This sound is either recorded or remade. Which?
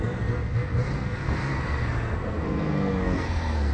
remade